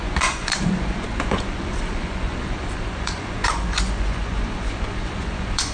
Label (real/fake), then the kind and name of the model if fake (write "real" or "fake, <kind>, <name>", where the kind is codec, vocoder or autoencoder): fake, vocoder, Vocos